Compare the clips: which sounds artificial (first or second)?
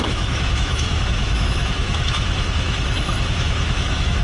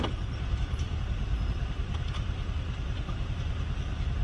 first